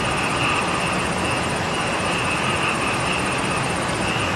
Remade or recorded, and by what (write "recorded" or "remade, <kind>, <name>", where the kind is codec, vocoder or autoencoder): recorded